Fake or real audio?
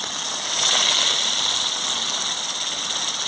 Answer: real